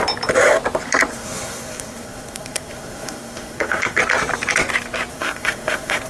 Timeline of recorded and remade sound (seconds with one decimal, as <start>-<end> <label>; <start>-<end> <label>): 0.0-1.1 recorded; 1.1-4.0 remade; 4.0-5.1 recorded; 5.1-6.1 remade